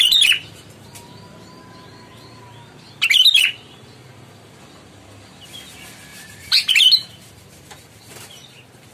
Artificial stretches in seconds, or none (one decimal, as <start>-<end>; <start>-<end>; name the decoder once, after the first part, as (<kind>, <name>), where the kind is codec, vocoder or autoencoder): 6.1-7.1 (vocoder, BigVGAN v2)